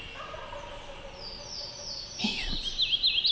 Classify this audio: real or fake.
real